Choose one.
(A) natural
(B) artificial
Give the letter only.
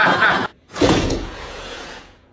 B